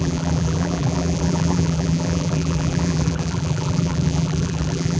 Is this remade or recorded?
remade